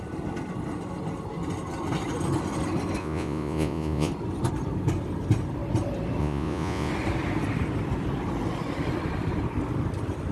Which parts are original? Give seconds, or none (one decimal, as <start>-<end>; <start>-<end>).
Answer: 0.0-3.0; 4.1-6.2; 6.9-10.3